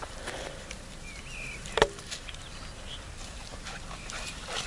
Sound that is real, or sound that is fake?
real